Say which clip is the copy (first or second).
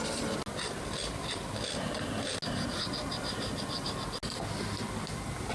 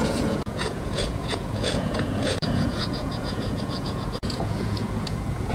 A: second